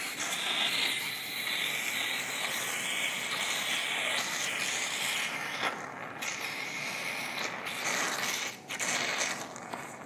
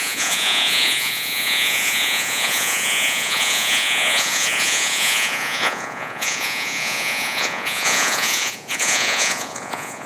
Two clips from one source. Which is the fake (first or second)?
second